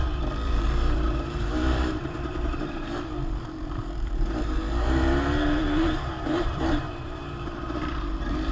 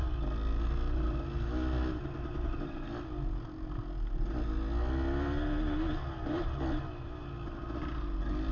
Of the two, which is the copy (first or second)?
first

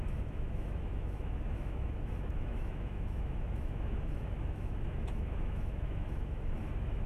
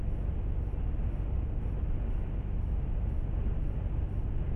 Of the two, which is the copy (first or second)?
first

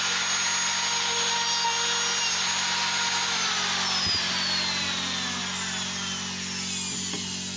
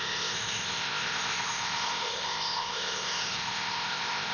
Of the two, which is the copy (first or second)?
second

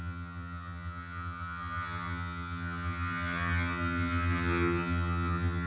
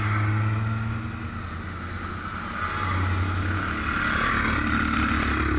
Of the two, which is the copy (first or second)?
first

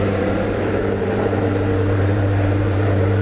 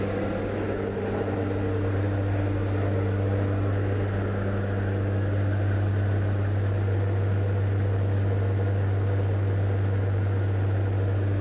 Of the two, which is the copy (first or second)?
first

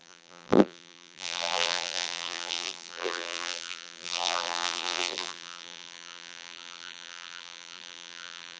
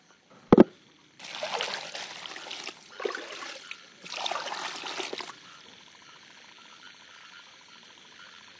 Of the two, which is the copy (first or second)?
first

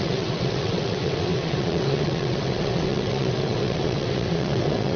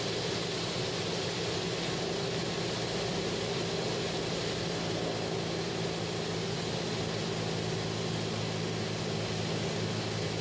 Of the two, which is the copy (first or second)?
first